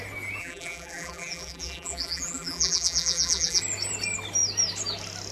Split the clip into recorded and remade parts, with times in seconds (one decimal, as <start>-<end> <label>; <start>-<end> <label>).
0.0-0.4 recorded; 0.4-3.6 remade; 3.6-5.3 recorded